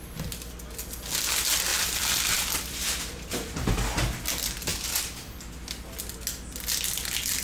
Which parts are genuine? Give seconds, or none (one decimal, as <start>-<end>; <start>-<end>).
0.0-1.7; 3.7-4.7; 5.5-7.4